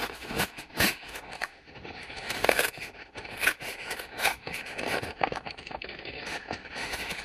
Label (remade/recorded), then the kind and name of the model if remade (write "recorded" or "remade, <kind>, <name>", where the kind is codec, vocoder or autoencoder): remade, autoencoder, DAC-VAE